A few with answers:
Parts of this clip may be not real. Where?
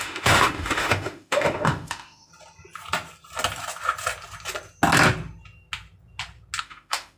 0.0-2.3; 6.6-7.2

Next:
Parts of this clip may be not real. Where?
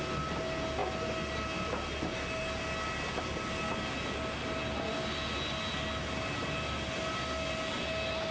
none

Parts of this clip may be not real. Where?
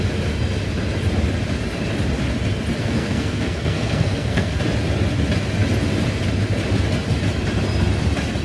2.8-4.6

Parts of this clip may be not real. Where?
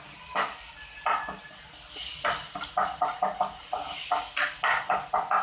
none